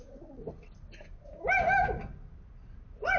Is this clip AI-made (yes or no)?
no